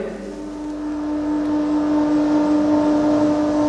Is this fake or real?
real